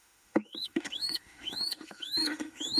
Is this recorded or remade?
remade